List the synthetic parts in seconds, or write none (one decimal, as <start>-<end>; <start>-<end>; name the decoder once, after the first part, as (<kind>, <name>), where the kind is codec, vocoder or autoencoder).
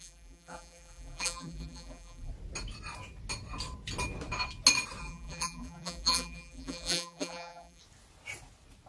0.0-2.3 (vocoder, BigVGAN v2); 5.0-7.8